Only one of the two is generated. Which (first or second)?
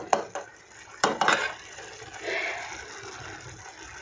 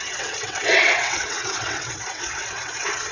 second